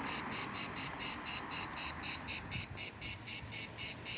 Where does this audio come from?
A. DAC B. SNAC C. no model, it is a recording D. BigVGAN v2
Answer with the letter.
C